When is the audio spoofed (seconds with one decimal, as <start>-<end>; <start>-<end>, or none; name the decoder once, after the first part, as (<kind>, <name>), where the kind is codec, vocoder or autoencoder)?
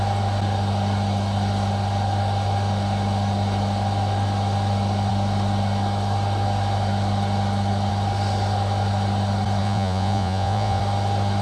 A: 9.6-10.8 (vocoder, Vocos)